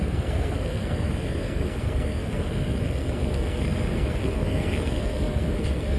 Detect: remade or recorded remade